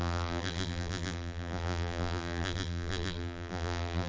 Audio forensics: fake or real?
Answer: fake